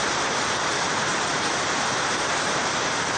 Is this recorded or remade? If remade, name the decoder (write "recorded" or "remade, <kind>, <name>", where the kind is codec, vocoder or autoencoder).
remade, vocoder, BigVGAN v2